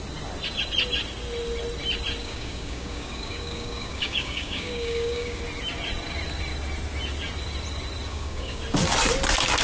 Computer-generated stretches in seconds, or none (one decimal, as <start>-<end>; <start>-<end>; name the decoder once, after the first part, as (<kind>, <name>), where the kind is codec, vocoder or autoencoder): 2.2-5.4 (codec, DAC); 8.1-8.6